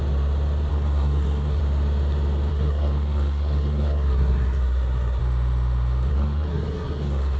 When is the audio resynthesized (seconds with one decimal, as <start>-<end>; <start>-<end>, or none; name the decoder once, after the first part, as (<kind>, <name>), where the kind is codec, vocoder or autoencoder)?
0.7-1.6 (codec, SNAC); 2.5-5.2; 6.1-7.4